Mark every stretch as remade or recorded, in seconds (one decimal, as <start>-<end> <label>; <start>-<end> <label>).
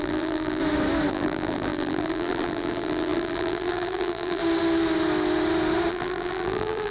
0.0-0.6 remade; 0.6-1.1 recorded; 1.1-4.4 remade; 4.4-5.9 recorded; 5.9-6.9 remade